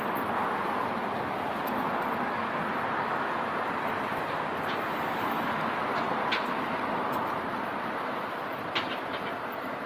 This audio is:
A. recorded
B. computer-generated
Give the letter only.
A